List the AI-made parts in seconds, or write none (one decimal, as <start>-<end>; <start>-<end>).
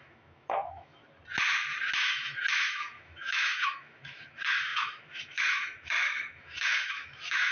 0.0-1.0; 2.0-7.5